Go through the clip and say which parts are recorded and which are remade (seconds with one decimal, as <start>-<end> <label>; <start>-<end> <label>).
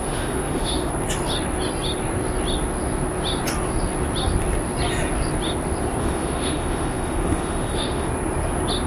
0.0-0.9 remade; 0.9-6.0 recorded; 6.0-8.1 remade; 8.1-8.9 recorded